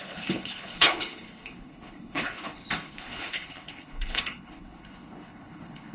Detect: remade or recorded remade